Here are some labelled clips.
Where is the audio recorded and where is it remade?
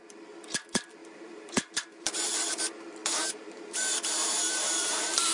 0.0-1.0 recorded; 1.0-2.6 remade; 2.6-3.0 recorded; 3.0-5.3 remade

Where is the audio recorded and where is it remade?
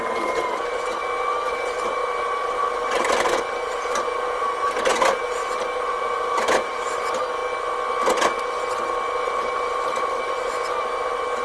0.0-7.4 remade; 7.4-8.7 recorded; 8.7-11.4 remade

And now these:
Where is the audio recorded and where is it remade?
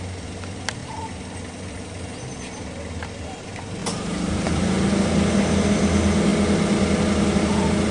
0.0-3.8 recorded; 3.8-4.9 remade; 4.9-7.9 recorded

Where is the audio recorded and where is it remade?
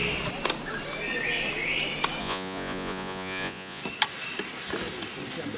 0.0-2.2 recorded; 2.2-3.8 remade; 3.8-5.6 recorded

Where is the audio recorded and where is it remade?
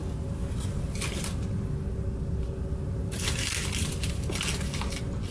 0.0-5.3 recorded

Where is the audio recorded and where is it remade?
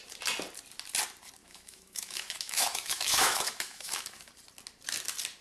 0.0-1.4 recorded; 1.4-4.3 remade; 4.3-5.4 recorded